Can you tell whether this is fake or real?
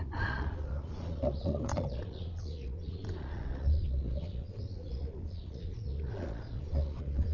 fake